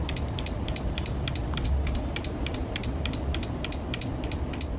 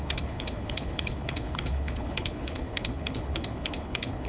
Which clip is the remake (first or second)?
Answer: second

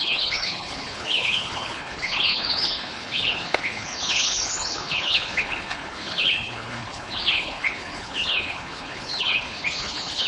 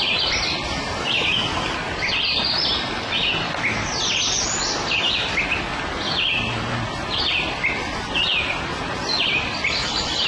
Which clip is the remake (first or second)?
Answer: first